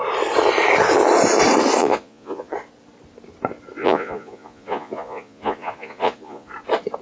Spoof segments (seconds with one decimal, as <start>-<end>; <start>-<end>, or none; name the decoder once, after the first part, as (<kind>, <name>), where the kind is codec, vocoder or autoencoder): 1.8-2.5 (vocoder, Vocos); 3.8-6.5